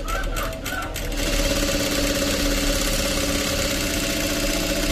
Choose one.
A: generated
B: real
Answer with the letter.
B